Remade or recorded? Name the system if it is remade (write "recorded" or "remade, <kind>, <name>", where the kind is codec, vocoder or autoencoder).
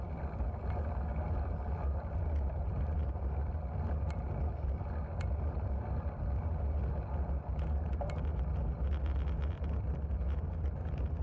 recorded